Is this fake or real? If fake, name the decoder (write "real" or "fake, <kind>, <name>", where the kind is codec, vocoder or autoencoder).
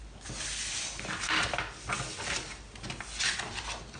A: real